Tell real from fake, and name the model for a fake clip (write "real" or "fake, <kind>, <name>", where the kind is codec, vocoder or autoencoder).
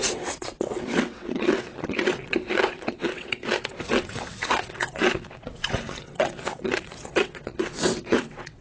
fake, vocoder, WaveNeXt